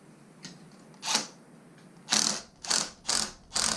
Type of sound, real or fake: real